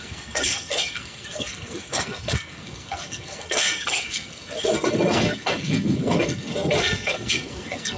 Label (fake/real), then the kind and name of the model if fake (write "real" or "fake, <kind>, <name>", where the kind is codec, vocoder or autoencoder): fake, codec, SNAC